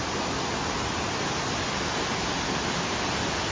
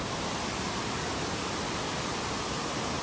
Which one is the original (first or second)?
first